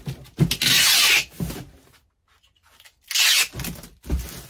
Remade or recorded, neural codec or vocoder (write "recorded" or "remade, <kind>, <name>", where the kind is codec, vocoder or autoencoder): recorded